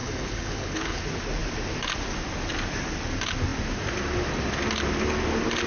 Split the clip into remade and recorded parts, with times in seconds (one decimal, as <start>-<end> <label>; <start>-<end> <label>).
0.0-1.0 remade; 1.0-5.7 recorded